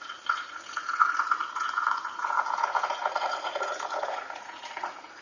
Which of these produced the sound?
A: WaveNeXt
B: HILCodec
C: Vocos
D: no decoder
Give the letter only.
C